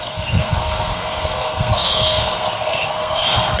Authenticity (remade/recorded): remade